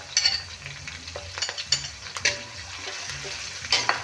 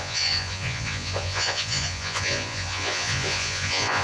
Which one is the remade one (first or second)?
second